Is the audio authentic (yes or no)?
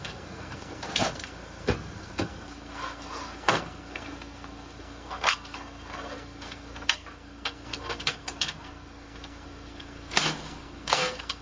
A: no